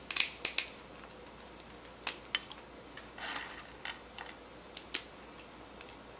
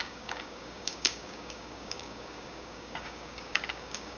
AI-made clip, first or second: second